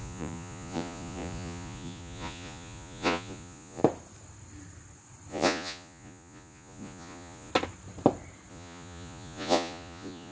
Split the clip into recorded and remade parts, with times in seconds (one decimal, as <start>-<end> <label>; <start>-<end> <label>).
0.0-3.8 remade; 3.8-5.3 recorded; 5.3-7.5 remade; 7.5-8.5 recorded; 8.5-10.3 remade